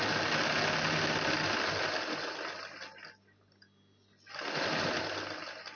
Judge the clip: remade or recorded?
recorded